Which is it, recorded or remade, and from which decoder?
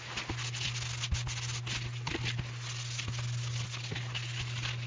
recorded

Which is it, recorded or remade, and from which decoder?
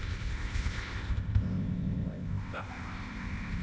remade, codec, ZipCodec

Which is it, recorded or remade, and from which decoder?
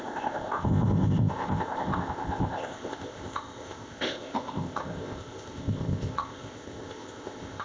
remade, codec, ZipCodec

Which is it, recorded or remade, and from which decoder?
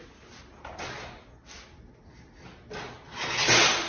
recorded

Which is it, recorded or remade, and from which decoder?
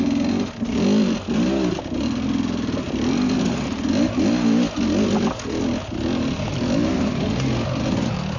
recorded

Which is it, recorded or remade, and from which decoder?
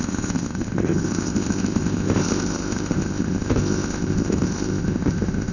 remade, codec, ZipCodec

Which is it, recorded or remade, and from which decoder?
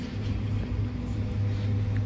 recorded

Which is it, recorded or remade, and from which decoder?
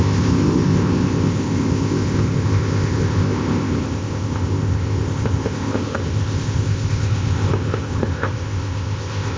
remade, codec, ZipCodec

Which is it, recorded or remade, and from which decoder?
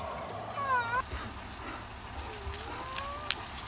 recorded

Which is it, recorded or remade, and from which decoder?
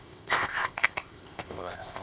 remade, codec, ZipCodec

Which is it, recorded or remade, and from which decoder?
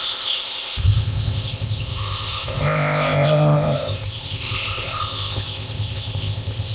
remade, codec, ZipCodec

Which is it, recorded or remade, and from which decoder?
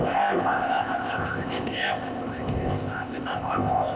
remade, codec, ZipCodec